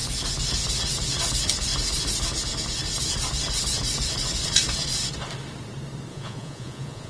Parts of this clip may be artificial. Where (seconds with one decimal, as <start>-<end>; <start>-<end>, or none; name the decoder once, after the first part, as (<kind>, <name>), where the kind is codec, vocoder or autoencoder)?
6.1-7.1 (vocoder, Vocos)